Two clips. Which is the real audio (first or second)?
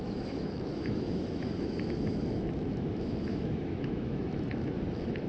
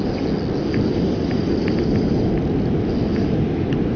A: second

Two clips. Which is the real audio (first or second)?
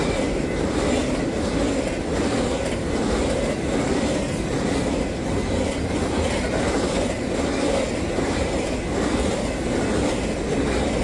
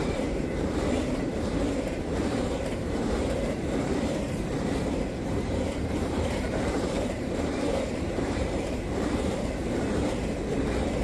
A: first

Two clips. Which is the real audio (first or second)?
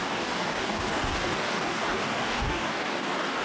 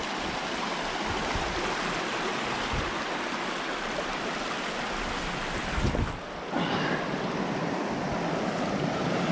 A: second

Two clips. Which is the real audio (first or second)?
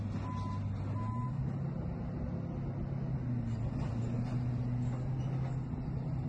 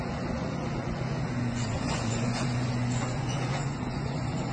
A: first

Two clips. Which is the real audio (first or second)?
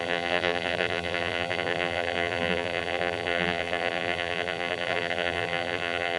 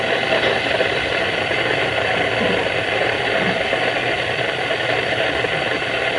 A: second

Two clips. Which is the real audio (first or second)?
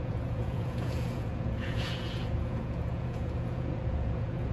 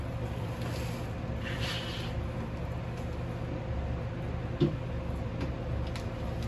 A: second